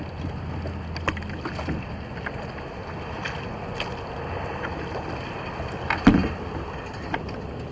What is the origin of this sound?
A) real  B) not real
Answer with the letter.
A